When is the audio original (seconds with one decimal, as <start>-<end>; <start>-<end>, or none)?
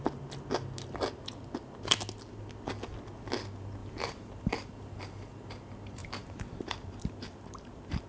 0.0-3.8; 5.5-6.0